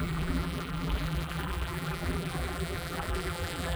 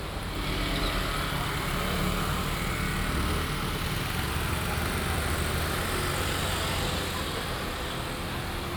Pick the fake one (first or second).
first